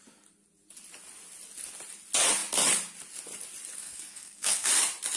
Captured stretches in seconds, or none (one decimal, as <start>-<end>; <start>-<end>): 0.0-3.8; 4.7-5.2